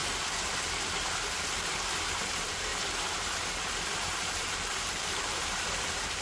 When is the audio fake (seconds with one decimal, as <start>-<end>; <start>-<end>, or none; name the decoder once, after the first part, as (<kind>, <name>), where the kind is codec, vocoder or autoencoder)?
2.2-2.7 (vocoder, BigVGAN v2); 3.6-6.2